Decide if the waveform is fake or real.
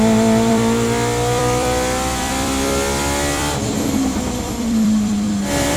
fake